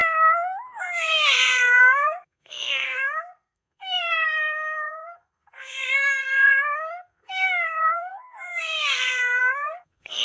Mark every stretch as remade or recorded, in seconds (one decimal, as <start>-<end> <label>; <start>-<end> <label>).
0.0-0.8 recorded; 0.8-10.2 remade